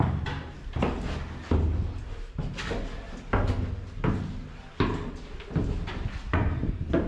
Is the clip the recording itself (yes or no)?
yes